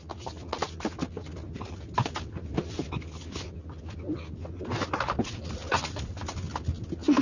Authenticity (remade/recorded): recorded